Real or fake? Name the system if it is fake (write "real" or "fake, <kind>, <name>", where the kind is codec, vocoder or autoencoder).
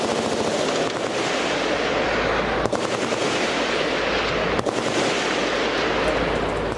real